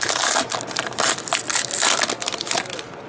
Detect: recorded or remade recorded